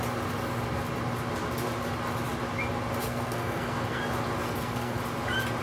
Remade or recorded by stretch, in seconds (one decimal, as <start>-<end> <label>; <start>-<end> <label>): 0.0-3.0 recorded; 3.0-4.0 remade; 4.0-4.4 recorded; 4.4-5.0 remade; 5.0-5.6 recorded